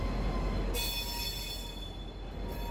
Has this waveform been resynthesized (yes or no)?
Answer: no